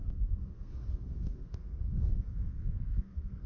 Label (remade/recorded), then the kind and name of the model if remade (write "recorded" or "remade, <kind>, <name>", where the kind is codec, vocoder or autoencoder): remade, codec, SNAC